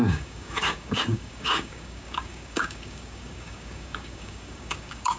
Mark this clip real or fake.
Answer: fake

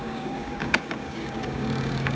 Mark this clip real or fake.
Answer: fake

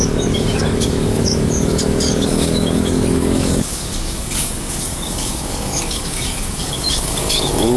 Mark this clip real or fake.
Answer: fake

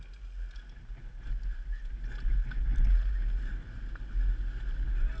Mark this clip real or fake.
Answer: real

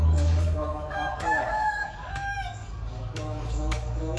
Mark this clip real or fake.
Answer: fake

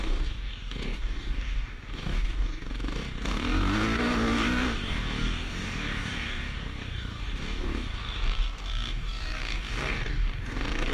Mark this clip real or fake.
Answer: fake